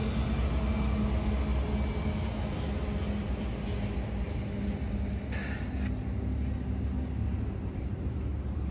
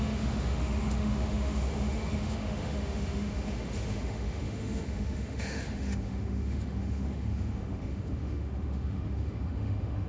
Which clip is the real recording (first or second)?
first